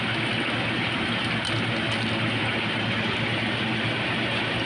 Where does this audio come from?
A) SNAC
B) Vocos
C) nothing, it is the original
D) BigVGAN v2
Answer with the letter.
C